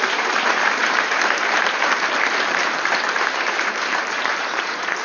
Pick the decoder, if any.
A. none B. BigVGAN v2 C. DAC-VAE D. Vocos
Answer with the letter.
B